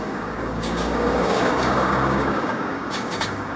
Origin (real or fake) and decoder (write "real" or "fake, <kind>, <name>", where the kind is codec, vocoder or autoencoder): fake, codec, DAC